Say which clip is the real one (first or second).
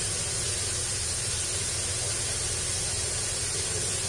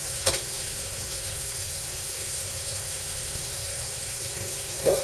first